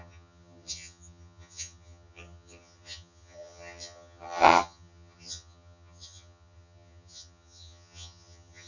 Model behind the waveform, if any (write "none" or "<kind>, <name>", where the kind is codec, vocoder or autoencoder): vocoder, HiFi-GAN